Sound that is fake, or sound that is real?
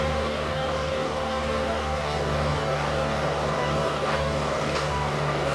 fake